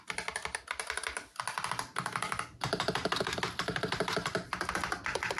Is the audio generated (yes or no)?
no